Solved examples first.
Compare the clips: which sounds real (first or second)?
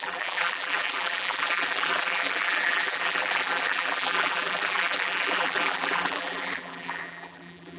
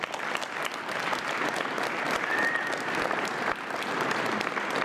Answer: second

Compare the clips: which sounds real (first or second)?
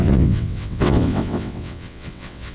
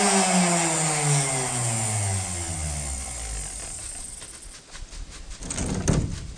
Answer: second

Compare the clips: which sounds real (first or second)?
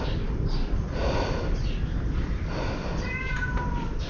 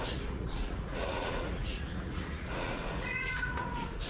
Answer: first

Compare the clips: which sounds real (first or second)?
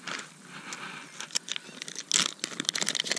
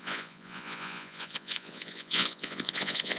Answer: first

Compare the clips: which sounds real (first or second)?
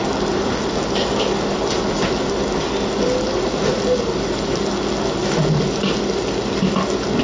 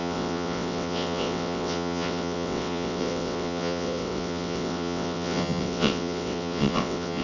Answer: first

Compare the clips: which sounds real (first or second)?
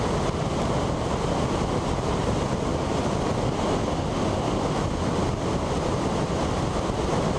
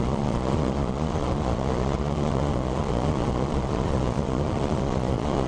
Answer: first